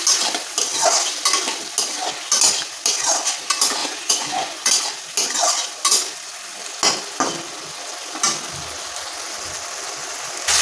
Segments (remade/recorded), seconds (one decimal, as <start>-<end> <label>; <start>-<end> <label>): 0.0-3.8 recorded; 3.8-4.7 remade; 4.7-10.6 recorded

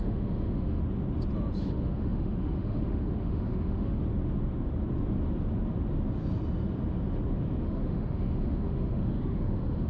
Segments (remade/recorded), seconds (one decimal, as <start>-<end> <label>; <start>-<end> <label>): 0.0-0.8 remade; 0.8-1.6 recorded; 1.6-4.0 remade; 4.0-7.6 recorded; 7.6-9.9 remade

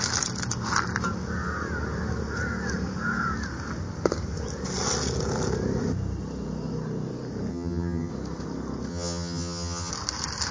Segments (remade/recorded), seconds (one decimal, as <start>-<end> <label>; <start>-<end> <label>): 0.0-7.5 recorded; 7.5-8.1 remade; 8.1-8.9 recorded; 8.9-9.9 remade; 9.9-10.5 recorded

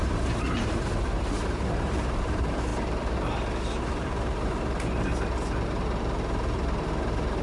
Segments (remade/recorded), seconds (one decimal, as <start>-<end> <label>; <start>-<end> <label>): 0.0-2.7 remade; 2.7-3.8 recorded; 3.8-5.1 remade; 5.1-6.0 recorded; 6.0-7.4 remade

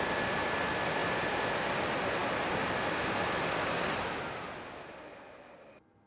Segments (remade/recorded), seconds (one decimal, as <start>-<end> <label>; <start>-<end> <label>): 0.0-6.1 recorded

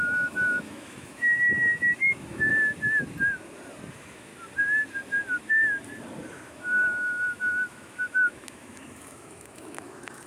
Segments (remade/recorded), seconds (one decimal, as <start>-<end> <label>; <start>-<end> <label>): 0.0-2.5 remade; 2.5-3.9 recorded; 3.9-4.3 remade; 4.3-6.5 recorded; 6.5-10.3 remade

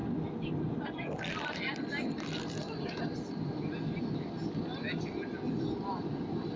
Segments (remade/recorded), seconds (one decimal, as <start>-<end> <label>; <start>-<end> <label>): 0.0-6.6 recorded